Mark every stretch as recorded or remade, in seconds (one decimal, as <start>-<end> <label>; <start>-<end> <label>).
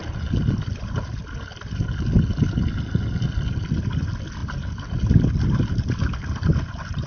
0.0-7.1 recorded